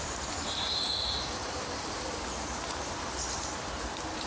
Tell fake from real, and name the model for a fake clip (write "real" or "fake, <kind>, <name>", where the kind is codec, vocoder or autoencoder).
fake, vocoder, BigVGAN v2